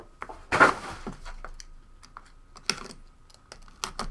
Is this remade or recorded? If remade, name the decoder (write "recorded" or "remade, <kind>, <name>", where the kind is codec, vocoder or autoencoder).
recorded